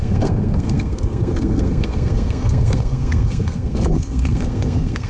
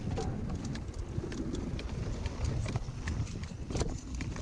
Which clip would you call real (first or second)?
second